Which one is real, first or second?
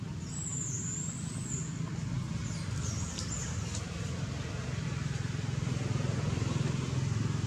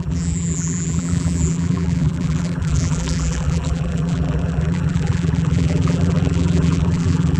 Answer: first